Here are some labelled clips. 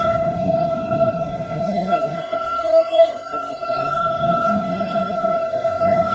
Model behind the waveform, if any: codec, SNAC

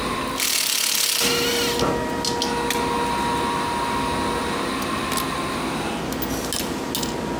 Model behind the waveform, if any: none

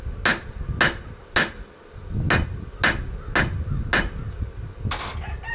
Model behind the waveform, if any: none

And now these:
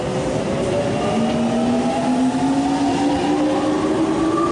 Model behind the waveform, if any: none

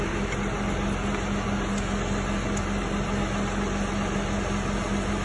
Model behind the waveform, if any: none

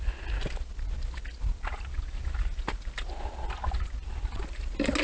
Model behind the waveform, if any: none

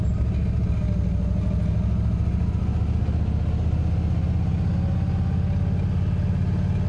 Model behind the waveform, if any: none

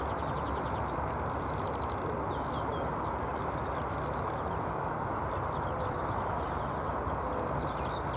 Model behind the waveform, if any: none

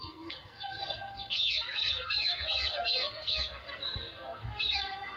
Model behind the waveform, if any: codec, SNAC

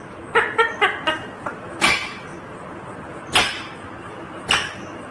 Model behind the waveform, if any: none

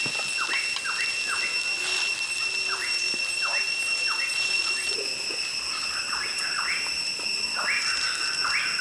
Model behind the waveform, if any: none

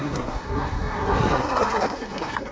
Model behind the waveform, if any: codec, SNAC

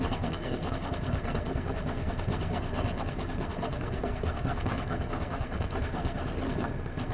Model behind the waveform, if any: codec, SNAC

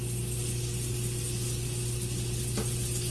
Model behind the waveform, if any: none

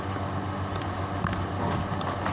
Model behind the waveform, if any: none